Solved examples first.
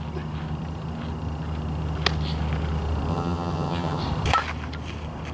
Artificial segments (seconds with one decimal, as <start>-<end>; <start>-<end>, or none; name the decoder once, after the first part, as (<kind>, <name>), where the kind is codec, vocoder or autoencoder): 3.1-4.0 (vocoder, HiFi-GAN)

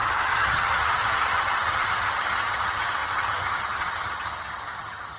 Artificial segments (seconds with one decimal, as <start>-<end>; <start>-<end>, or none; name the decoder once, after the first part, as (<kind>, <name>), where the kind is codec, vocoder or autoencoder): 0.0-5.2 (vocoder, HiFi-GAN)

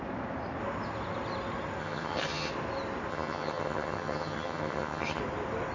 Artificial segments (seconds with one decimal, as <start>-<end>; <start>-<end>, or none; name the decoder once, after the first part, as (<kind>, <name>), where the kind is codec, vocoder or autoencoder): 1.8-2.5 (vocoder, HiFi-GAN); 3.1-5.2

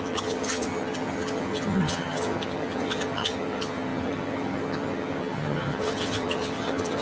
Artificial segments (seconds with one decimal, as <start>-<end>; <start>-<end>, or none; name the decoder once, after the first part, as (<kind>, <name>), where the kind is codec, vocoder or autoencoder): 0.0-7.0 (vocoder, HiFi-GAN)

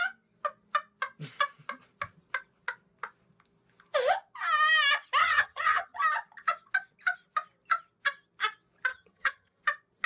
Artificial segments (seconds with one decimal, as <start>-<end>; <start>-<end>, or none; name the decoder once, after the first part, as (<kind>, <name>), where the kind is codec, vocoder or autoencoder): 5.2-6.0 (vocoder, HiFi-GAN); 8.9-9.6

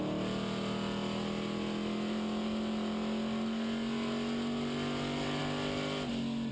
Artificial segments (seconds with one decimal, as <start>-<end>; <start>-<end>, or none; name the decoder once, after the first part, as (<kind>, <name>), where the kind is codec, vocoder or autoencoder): none

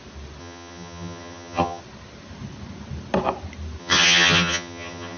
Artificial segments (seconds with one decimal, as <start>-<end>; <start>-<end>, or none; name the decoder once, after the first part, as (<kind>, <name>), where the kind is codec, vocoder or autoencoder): 0.4-1.8 (vocoder, HiFi-GAN); 3.8-5.2